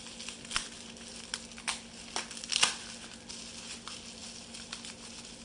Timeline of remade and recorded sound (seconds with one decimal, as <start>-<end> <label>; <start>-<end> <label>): 0.0-5.4 recorded